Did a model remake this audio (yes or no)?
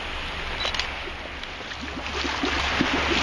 no